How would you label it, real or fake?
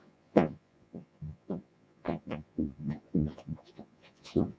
fake